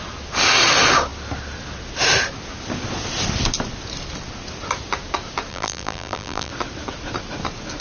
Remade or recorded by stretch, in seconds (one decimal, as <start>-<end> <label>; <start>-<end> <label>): 0.0-5.5 recorded; 5.5-6.5 remade; 6.5-7.8 recorded